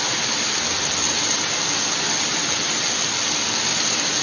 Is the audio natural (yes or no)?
yes